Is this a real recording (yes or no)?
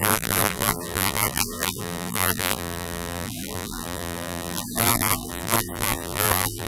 no